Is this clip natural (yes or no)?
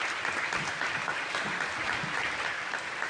yes